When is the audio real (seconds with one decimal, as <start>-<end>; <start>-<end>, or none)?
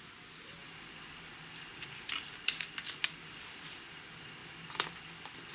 0.0-5.5